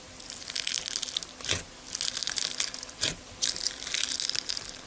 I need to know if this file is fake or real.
real